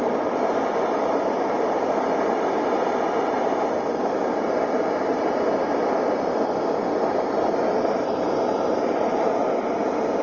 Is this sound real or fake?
real